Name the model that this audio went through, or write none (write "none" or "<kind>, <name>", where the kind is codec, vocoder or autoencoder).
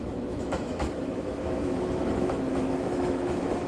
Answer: autoencoder, DAC-VAE